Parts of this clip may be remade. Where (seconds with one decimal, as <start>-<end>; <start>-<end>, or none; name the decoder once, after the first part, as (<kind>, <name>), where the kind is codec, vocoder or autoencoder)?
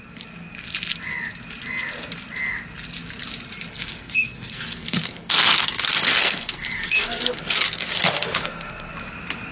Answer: 3.7-8.9 (codec, SNAC)